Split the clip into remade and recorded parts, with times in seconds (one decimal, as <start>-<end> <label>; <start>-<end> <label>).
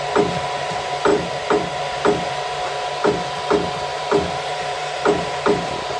0.0-1.1 recorded; 1.1-1.8 remade; 1.8-3.9 recorded; 3.9-6.0 remade